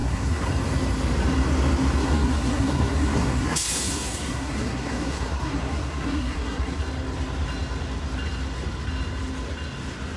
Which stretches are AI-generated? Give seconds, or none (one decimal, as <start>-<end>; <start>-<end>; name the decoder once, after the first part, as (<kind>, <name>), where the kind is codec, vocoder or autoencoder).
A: 0.0-0.5 (codec, SNAC); 2.0-6.8

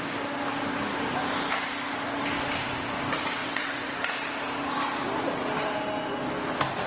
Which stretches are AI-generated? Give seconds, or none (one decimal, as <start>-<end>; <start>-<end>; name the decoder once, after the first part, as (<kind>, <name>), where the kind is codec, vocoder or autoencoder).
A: 3.4-4.0 (vocoder, WaveNeXt)